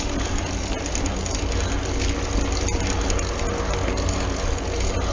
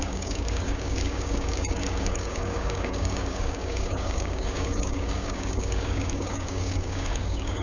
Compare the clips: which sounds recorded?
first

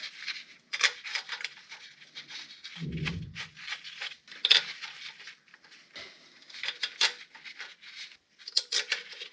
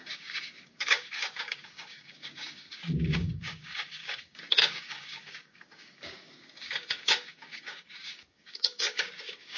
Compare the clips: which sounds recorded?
first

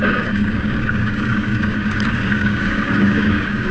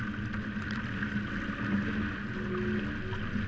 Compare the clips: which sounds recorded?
second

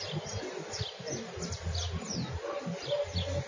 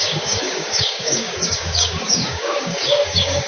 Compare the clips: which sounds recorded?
first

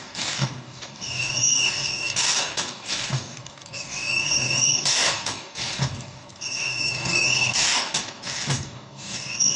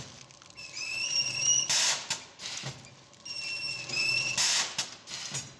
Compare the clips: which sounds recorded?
second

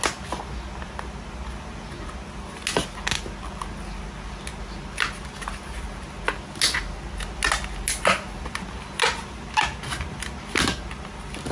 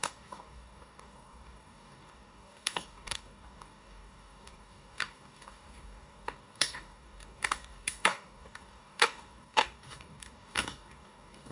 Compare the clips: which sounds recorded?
first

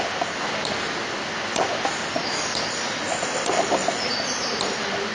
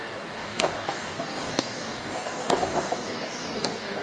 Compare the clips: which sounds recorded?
first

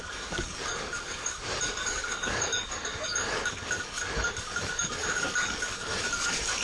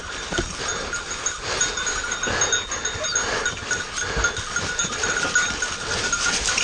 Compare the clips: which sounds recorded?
second